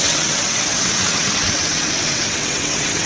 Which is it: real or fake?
fake